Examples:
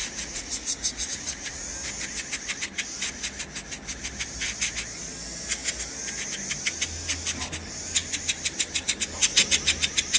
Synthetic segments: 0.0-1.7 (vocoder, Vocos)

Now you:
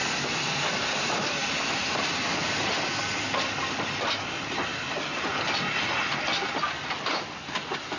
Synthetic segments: none

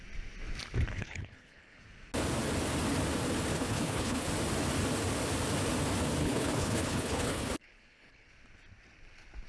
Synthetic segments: 0.9-1.8 (codec, HILCodec); 3.5-4.3; 6.2-8.3

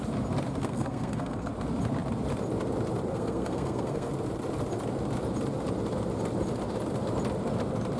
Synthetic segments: 0.6-1.5 (codec, SNAC); 3.1-4.1

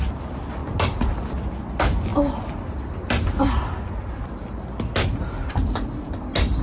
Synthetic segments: none